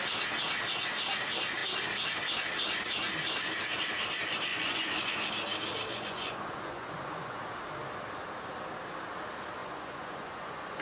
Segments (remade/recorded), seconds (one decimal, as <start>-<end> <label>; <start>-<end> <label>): 0.0-4.5 recorded; 4.5-5.1 remade; 5.1-5.9 recorded; 5.9-7.4 remade; 7.4-9.6 recorded; 9.6-10.8 remade